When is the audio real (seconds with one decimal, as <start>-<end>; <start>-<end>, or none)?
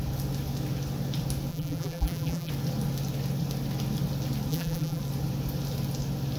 0.0-1.5; 2.5-4.5; 5.0-6.4